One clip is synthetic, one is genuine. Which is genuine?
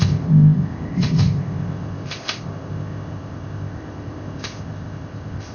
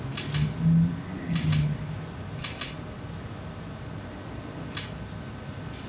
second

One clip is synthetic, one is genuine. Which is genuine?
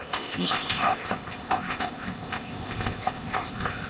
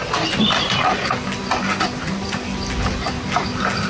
second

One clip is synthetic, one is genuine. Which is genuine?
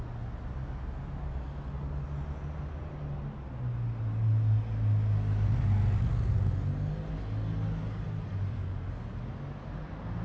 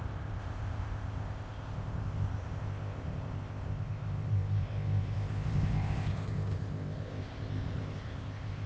first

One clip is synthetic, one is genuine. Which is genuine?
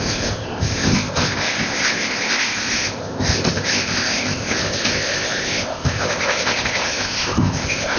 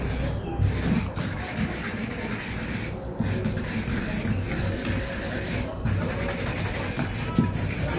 second